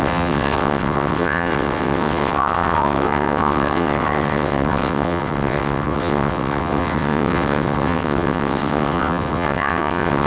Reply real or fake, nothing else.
fake